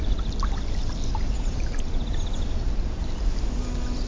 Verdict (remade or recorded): recorded